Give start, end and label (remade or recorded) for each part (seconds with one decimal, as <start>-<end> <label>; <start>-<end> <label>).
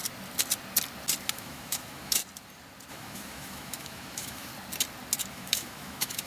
0.0-1.3 recorded; 1.3-2.2 remade; 2.2-2.9 recorded; 2.9-4.5 remade; 4.5-5.3 recorded; 5.3-6.3 remade